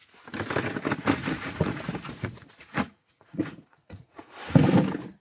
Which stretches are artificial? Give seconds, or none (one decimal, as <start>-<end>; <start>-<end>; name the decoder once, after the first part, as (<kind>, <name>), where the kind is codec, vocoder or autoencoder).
1.2-4.3 (vocoder, Vocos)